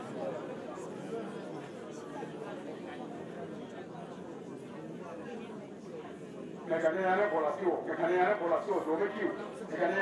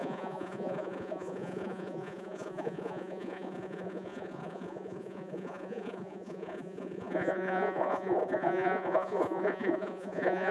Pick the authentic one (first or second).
first